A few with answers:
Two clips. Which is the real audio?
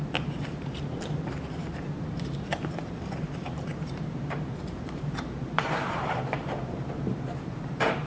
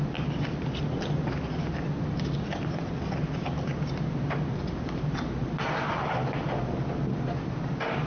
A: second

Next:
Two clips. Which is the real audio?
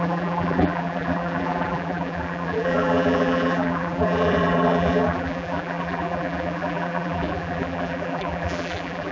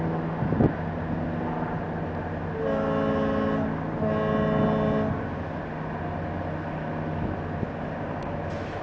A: second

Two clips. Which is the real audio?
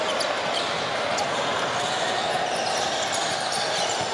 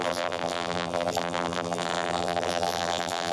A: first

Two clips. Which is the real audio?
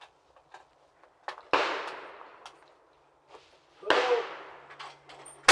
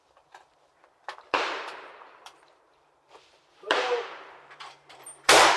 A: first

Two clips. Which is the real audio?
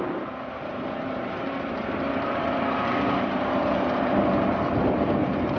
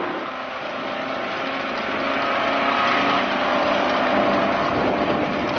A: second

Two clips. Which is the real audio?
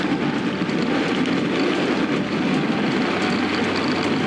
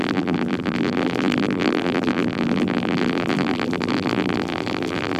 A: first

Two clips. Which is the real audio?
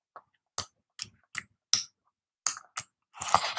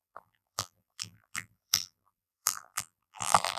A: first